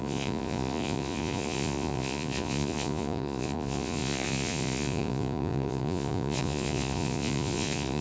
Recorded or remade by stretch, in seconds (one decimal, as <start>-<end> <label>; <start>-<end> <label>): 0.0-8.0 remade